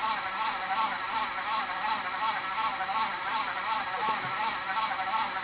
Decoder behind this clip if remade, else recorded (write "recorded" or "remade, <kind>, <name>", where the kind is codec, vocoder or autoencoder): recorded